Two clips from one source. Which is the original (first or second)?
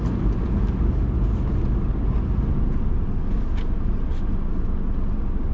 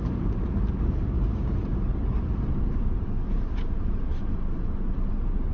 first